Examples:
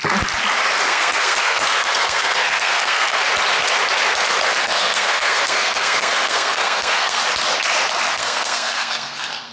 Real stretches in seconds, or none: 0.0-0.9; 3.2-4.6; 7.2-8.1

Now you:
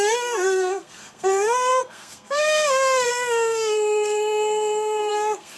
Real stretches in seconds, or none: none

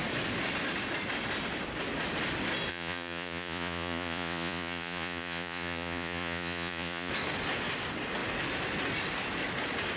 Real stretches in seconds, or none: 0.0-2.7; 7.1-10.0

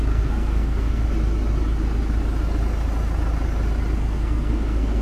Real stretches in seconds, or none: 1.0-4.0

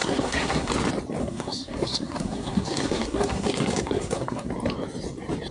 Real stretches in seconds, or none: 0.7-1.2; 4.5-5.5